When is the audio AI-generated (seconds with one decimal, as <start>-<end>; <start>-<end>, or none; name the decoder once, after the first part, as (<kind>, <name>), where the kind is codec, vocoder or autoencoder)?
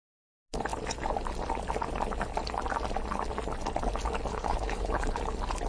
4.3-5.2 (codec, HILCodec)